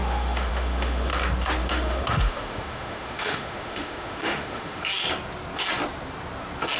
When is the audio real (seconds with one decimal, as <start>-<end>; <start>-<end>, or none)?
1.1-1.6; 4.8-6.8